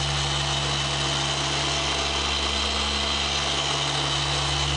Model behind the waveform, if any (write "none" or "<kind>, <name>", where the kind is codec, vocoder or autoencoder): none